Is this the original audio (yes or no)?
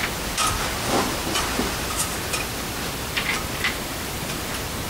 no